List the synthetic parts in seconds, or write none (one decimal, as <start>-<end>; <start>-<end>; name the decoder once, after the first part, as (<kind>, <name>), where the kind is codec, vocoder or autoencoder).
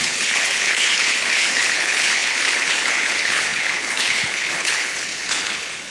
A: 0.0-5.9 (codec, HILCodec)